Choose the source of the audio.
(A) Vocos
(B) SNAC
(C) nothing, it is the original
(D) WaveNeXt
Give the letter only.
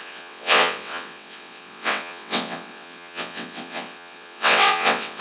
D